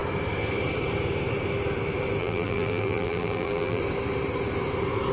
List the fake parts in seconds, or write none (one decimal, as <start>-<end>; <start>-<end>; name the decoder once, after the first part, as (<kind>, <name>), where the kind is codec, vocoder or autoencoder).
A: 2.2-3.8 (vocoder, BigVGAN v2)